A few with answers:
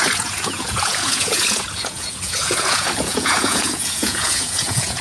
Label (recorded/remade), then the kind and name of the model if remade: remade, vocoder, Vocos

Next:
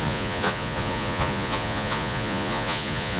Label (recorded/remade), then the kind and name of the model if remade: remade, vocoder, Vocos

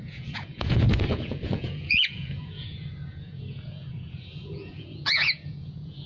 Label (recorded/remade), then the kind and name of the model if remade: remade, vocoder, Vocos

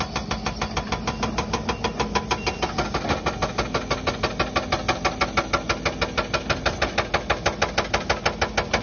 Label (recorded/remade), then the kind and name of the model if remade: recorded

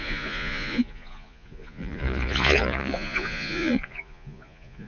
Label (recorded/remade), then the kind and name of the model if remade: remade, vocoder, Vocos